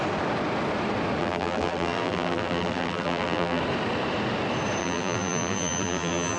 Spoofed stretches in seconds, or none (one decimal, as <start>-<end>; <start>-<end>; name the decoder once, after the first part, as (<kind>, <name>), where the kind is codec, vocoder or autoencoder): 1.2-3.6 (vocoder, BigVGAN v2); 4.8-6.4